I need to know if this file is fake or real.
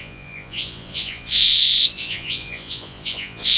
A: fake